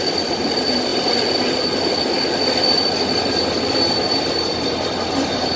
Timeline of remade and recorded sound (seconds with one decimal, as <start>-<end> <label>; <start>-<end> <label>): 0.0-5.6 recorded